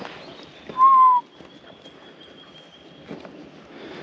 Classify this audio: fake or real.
real